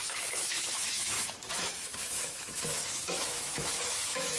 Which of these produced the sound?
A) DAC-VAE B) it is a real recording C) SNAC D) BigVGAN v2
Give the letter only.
A